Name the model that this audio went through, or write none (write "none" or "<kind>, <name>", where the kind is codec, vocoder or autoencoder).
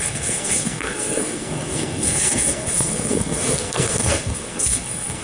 codec, SNAC